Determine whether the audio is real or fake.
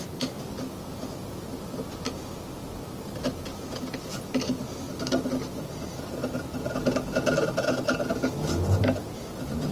real